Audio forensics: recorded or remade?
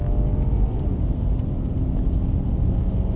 recorded